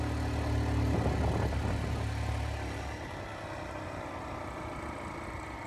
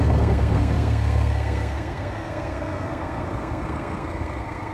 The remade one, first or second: second